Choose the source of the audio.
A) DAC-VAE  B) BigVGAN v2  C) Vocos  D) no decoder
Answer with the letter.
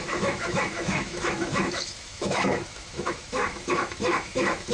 A